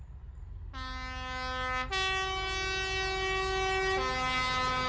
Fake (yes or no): no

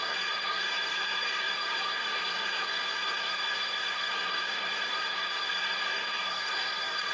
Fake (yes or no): yes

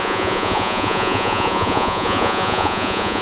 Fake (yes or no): yes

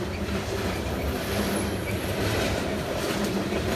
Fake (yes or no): yes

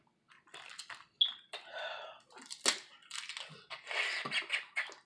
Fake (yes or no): no